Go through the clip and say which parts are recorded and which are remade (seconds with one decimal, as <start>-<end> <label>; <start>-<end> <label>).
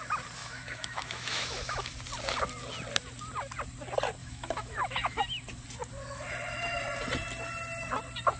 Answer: 0.0-0.4 recorded; 0.4-1.9 remade; 1.9-4.2 recorded; 4.2-5.2 remade; 5.2-8.4 recorded